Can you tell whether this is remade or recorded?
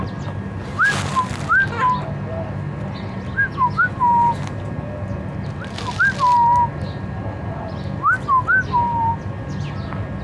recorded